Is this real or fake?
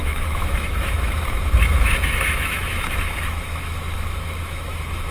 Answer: fake